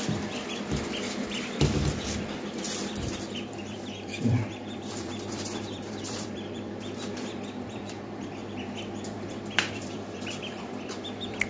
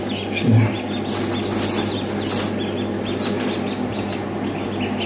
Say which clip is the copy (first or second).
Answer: first